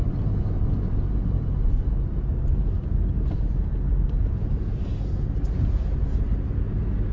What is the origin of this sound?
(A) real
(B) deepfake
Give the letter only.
A